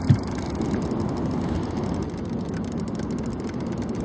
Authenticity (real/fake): real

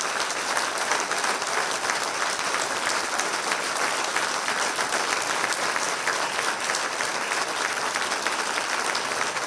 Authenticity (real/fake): fake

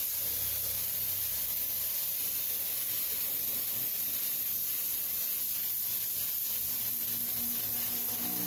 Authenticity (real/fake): real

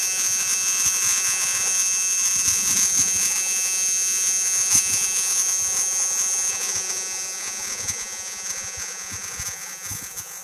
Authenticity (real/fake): fake